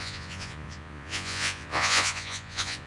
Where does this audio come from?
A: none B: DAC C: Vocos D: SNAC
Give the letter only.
C